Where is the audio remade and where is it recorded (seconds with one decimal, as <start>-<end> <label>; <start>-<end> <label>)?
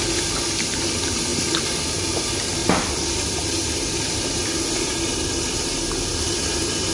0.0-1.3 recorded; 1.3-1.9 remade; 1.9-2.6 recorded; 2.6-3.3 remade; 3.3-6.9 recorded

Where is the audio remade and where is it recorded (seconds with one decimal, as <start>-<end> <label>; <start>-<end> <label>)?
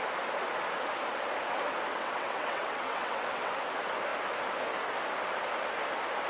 0.0-1.9 recorded; 1.9-3.5 remade; 3.5-6.3 recorded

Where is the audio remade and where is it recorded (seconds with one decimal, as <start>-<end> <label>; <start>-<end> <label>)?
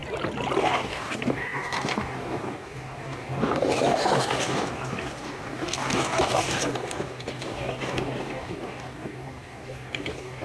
0.0-0.6 recorded; 0.6-10.4 remade